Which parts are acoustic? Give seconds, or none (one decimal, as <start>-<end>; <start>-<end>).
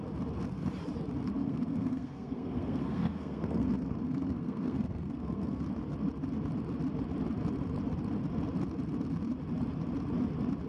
0.0-1.4; 5.6-10.7